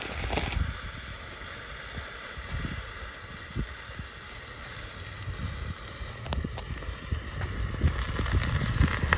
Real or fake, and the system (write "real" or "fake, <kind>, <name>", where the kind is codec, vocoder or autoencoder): real